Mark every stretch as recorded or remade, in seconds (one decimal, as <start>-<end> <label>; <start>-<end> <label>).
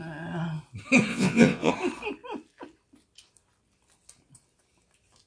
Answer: 0.0-1.1 recorded; 1.1-1.7 remade; 1.7-5.3 recorded